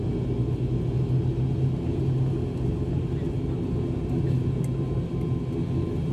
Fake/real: real